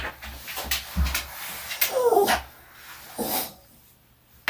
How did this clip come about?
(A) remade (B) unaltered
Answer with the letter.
B